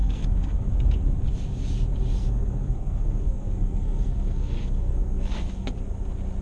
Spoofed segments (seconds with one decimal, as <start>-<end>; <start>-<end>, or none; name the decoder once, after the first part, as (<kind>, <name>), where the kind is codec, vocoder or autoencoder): 0.0-0.7 (codec, SNAC); 2.2-5.8